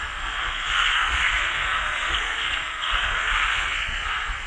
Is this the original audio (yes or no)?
no